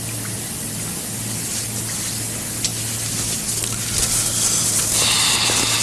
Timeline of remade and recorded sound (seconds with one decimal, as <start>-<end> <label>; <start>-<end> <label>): 0.0-5.8 recorded